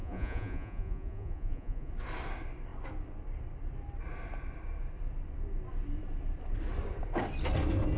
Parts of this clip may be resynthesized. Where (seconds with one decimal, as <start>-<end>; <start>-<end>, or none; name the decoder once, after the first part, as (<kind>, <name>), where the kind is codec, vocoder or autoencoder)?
0.0-1.9 (vocoder, Vocos)